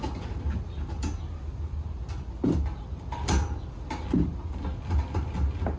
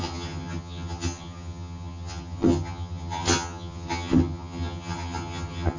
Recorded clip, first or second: first